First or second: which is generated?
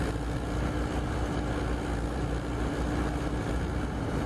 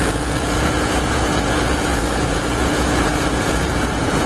second